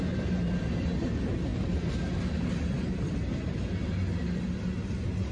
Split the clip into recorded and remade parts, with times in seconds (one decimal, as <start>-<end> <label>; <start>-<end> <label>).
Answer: 0.0-5.3 recorded